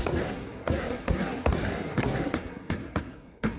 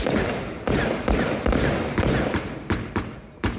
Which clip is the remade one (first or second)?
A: first